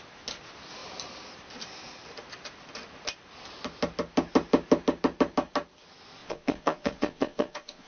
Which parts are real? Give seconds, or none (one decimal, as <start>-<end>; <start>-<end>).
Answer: 0.0-6.2